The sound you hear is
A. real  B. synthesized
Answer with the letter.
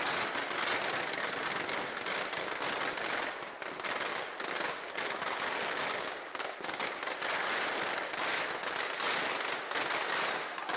A